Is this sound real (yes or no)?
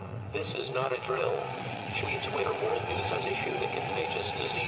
no